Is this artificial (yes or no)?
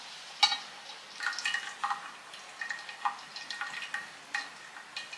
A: no